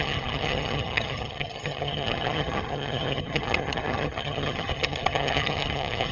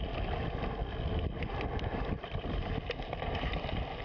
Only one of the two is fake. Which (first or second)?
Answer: first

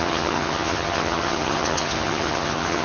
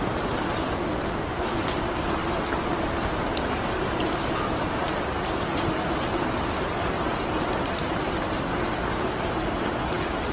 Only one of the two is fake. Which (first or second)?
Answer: first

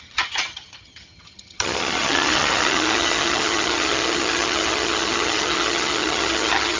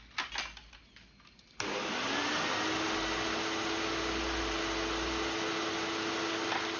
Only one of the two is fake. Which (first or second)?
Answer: first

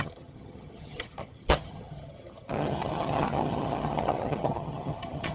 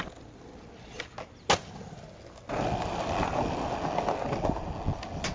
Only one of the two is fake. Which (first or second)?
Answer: first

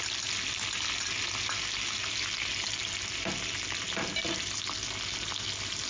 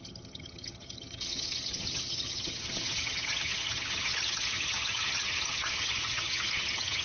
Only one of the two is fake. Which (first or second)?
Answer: second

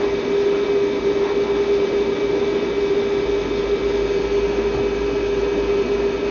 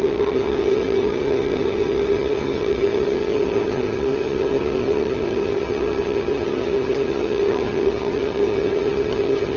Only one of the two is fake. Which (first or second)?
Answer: second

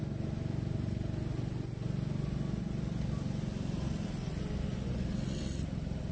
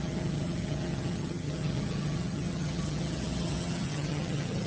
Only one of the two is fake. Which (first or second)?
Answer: second